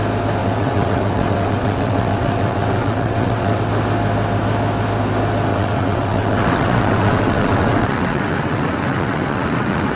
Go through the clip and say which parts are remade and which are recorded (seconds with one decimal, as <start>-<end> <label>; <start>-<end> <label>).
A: 0.0-0.4 recorded; 0.4-3.6 remade; 3.6-5.5 recorded; 5.5-10.0 remade